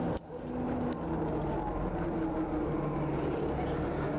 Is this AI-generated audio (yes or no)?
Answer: no